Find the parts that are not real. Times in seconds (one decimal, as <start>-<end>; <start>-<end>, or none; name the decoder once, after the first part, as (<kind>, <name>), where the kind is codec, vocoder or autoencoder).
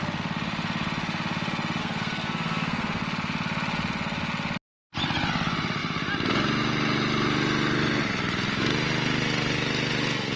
1.8-3.0 (codec, SNAC)